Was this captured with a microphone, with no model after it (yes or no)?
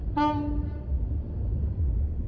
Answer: yes